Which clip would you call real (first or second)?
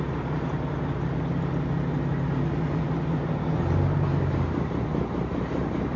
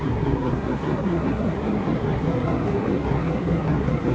first